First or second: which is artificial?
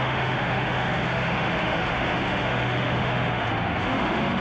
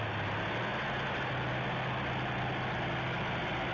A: first